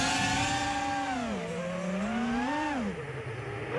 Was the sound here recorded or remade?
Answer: recorded